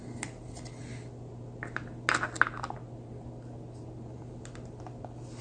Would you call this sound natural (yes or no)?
yes